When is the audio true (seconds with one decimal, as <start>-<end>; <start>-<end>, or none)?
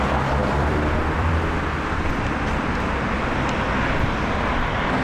0.0-0.4; 1.3-5.0